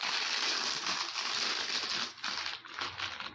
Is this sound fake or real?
real